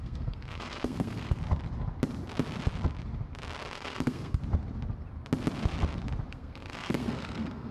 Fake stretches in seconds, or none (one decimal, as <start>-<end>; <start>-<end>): 0.0-1.4; 3.7-4.4; 6.3-7.7